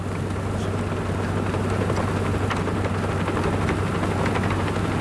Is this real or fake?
real